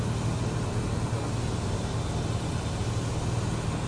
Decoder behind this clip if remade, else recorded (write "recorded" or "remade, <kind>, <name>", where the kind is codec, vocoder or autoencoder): recorded